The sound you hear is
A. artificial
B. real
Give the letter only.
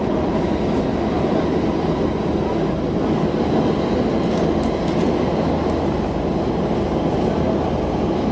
B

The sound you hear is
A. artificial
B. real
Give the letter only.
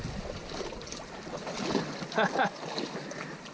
B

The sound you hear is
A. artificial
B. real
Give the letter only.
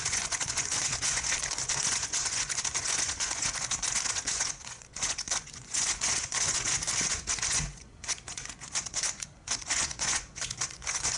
A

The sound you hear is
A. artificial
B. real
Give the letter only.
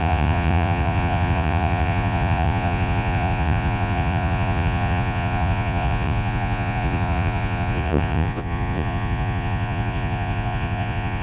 A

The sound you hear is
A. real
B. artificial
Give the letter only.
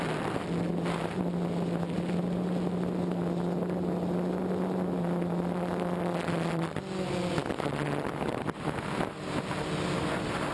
A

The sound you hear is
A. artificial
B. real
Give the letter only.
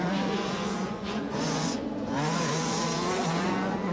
A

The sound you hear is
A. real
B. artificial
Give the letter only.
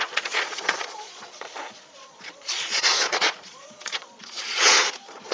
B